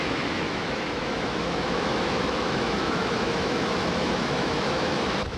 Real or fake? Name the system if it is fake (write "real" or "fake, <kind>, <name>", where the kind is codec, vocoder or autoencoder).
fake, autoencoder, DAC-VAE